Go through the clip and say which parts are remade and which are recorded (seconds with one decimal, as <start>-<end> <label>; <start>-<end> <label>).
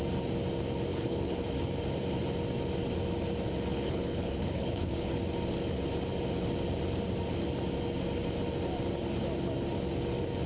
0.0-0.9 recorded; 0.9-1.5 remade; 1.5-3.7 recorded; 3.7-5.2 remade; 5.2-10.5 recorded